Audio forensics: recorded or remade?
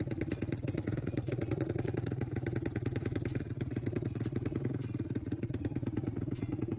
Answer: remade